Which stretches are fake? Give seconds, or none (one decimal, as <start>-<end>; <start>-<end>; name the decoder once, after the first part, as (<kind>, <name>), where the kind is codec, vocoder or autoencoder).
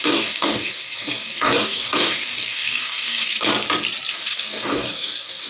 0.0-3.5 (codec, DAC); 4.1-5.5